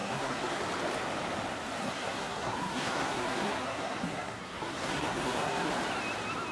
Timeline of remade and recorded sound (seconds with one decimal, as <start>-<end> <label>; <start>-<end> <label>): 0.0-0.6 remade; 0.6-1.8 recorded; 1.8-5.7 remade; 5.7-6.5 recorded